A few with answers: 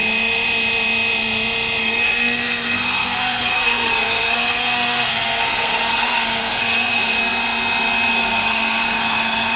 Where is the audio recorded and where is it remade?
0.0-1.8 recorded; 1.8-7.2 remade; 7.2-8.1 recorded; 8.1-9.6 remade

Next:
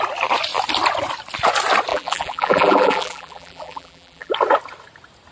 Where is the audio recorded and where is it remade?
0.0-1.9 recorded; 1.9-4.3 remade; 4.3-5.3 recorded

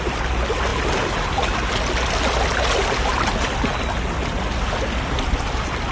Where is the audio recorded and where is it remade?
0.0-5.9 recorded

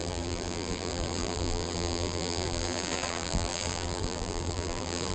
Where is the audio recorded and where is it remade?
0.0-5.1 remade

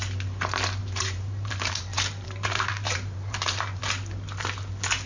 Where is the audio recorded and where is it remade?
0.0-0.8 recorded; 0.8-3.8 remade; 3.8-5.1 recorded

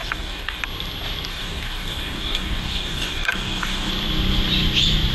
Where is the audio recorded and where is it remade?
0.0-0.6 remade; 0.6-1.3 recorded; 1.3-3.9 remade; 3.9-5.1 recorded

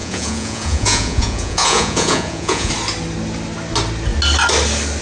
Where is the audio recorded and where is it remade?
0.0-2.7 remade; 2.7-5.0 recorded